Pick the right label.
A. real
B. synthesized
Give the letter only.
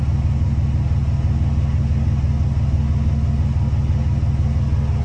A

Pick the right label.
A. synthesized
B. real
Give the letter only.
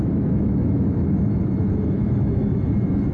A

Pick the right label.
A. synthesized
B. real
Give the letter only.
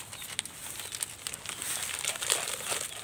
B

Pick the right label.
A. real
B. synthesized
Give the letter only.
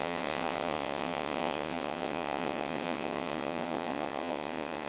B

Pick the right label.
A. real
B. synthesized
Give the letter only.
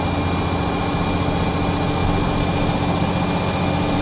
A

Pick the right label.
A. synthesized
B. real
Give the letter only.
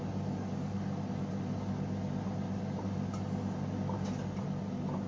B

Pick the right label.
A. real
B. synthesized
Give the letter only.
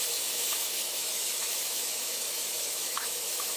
B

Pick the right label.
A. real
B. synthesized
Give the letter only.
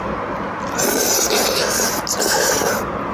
A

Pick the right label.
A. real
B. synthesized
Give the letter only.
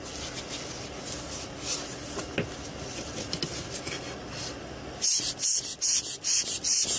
A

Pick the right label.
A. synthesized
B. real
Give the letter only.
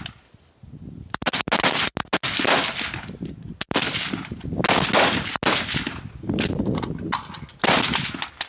B